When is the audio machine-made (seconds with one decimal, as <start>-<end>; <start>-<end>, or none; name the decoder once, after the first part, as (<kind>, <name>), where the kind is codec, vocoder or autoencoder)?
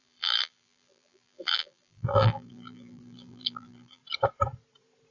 0.0-4.0 (vocoder, BigVGAN v2)